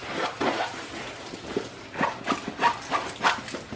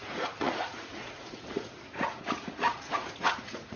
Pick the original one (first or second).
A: first